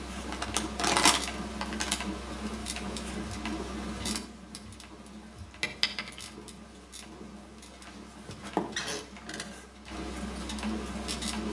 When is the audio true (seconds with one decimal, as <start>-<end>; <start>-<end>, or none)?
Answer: 0.0-2.6; 3.1-11.5

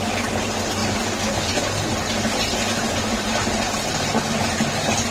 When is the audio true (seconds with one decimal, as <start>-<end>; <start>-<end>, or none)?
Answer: 0.0-5.1

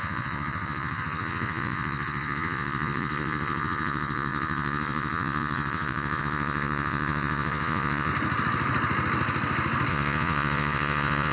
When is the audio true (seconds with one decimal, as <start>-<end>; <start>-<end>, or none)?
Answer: 8.1-9.9

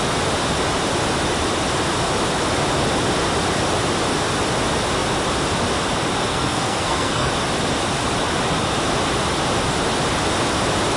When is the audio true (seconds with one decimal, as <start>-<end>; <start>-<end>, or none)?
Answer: 0.0-6.3; 7.3-11.0